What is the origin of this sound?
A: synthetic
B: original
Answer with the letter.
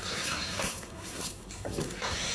A